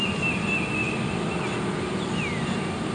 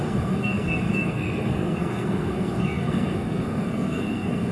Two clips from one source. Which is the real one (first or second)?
first